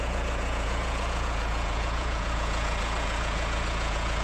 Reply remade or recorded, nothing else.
remade